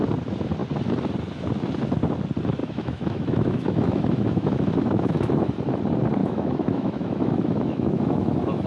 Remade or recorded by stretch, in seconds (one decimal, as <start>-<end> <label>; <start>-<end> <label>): 0.0-2.6 recorded; 2.6-5.5 remade; 5.5-6.2 recorded; 6.2-8.7 remade